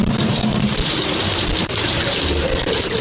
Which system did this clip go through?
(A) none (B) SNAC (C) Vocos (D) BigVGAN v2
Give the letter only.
D